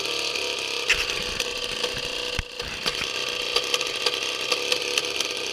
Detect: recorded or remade recorded